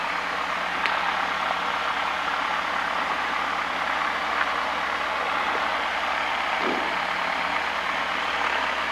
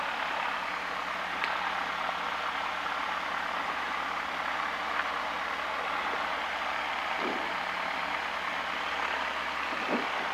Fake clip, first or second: second